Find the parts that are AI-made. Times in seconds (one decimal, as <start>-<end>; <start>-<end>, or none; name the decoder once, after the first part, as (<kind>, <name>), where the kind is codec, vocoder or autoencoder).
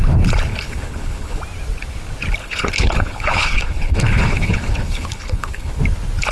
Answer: 0.5-1.4 (codec, HILCodec); 2.4-5.8